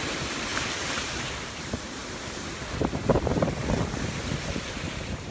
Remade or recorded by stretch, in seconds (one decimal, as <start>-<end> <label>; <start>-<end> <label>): 0.0-0.5 remade; 0.5-1.0 recorded; 1.0-2.0 remade; 2.0-2.8 recorded; 2.8-3.3 remade; 3.3-4.7 recorded; 4.7-5.3 remade